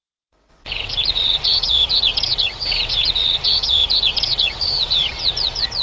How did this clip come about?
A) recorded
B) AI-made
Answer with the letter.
B